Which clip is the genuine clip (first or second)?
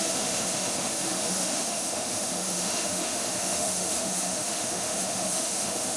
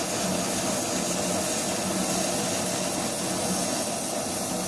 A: second